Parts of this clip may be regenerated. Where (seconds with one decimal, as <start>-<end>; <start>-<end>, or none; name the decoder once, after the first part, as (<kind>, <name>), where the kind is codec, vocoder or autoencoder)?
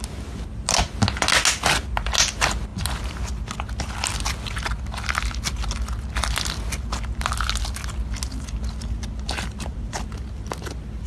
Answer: none